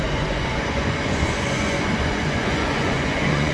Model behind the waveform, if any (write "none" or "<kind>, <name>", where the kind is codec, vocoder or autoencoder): vocoder, Vocos